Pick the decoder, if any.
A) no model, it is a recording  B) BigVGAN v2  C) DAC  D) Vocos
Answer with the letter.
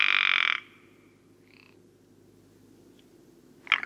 A